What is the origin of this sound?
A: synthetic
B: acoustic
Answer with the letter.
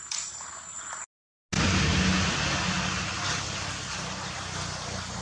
B